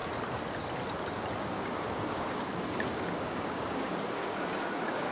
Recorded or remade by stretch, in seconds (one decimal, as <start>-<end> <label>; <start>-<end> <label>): 0.0-1.4 recorded; 1.4-5.1 remade